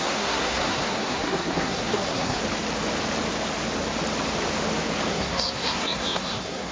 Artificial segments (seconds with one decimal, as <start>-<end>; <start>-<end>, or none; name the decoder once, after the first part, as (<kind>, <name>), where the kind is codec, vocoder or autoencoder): 0.0-2.4 (codec, SNAC); 5.1-6.7